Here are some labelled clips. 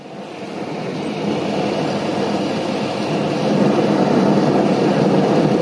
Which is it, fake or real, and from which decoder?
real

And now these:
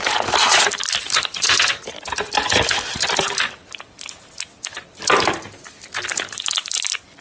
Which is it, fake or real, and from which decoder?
real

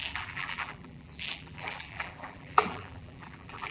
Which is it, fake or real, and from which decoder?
fake, vocoder, BigVGAN v2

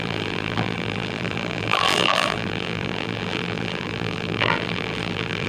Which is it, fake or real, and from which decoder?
fake, vocoder, BigVGAN v2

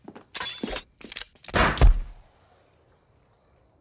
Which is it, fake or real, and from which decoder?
real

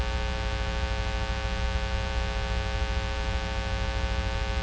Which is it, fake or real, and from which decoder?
real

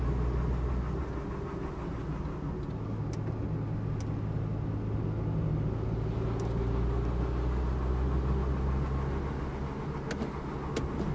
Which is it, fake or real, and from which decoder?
real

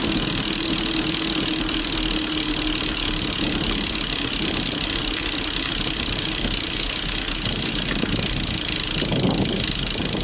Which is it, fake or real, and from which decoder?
real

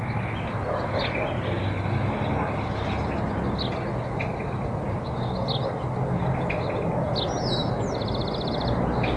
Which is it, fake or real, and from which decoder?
real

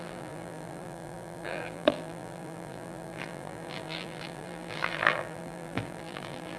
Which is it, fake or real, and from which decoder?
fake, vocoder, BigVGAN v2